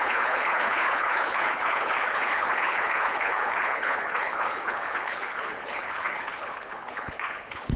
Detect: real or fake fake